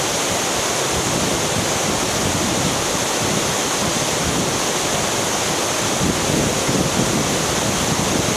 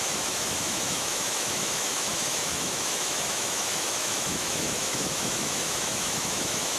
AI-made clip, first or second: second